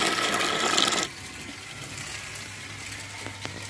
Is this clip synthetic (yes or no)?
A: no